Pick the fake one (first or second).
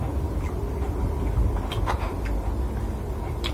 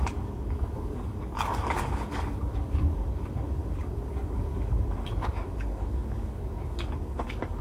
second